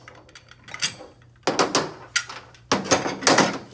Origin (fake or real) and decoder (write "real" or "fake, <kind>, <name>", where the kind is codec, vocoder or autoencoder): real